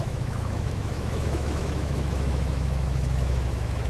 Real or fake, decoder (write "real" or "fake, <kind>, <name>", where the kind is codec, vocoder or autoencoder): fake, autoencoder, DAC-VAE